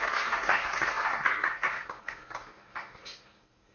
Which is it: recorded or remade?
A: remade